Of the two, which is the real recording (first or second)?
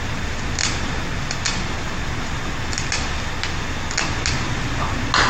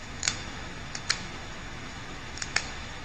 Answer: first